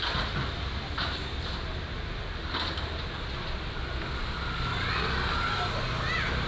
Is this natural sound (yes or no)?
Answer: yes